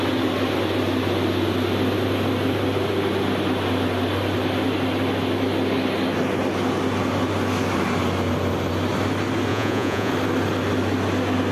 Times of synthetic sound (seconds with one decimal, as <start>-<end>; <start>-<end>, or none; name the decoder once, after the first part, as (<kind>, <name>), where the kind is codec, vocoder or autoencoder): 9.5-10.1 (vocoder, Vocos)